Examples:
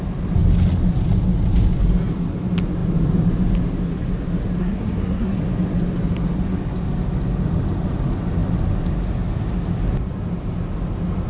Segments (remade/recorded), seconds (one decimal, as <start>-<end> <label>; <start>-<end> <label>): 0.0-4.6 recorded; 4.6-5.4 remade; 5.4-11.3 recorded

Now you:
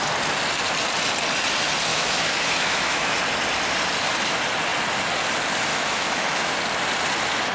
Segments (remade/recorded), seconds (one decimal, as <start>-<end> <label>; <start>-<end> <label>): 0.0-1.9 recorded; 1.9-3.1 remade; 3.1-5.7 recorded; 5.7-6.5 remade; 6.5-7.5 recorded

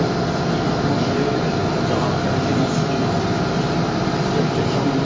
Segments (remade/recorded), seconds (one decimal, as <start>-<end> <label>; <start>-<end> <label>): 0.0-5.0 recorded

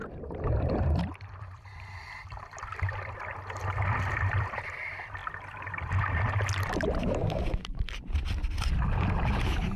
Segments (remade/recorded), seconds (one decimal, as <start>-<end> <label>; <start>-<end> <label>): 0.0-9.8 remade